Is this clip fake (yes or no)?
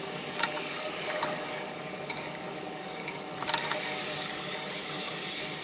yes